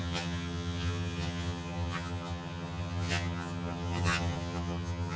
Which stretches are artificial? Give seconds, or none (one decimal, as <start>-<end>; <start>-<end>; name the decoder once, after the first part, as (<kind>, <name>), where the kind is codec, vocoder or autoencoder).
0.0-5.2 (vocoder, HiFi-GAN)